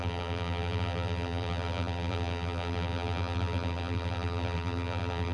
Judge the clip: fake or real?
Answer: fake